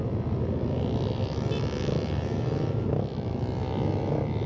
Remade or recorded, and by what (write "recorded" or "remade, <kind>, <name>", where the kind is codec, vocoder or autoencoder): recorded